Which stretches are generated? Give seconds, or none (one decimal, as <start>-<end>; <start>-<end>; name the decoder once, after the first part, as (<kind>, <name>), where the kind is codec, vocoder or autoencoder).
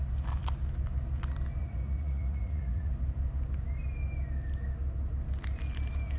1.6-2.9 (vocoder, Vocos)